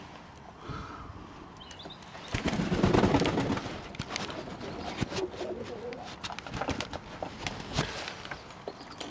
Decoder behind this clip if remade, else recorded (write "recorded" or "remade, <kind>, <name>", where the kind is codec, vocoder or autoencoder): recorded